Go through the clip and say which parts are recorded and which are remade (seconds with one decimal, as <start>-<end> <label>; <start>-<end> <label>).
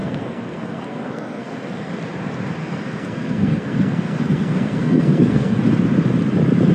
0.0-1.9 remade; 1.9-2.6 recorded; 2.6-5.6 remade; 5.6-6.7 recorded